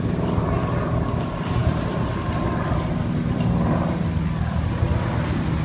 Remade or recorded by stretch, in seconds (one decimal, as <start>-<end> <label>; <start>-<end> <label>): 0.0-5.6 recorded